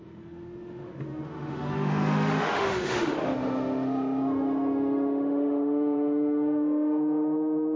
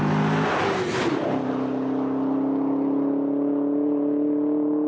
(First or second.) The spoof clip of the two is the first